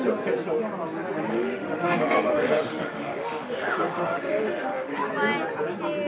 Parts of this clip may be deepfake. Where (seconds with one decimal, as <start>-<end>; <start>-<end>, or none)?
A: 1.3-5.0